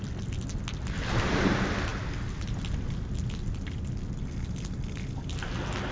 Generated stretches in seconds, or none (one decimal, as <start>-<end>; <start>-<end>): none